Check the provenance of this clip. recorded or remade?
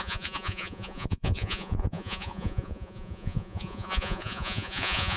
remade